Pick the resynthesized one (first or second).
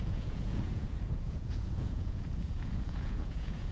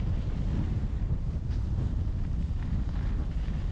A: first